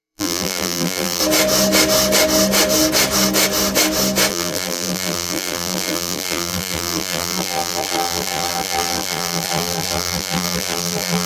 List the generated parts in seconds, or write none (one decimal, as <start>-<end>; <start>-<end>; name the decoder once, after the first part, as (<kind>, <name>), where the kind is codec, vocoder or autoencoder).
0.0-1.2 (vocoder, BigVGAN v2); 4.3-11.3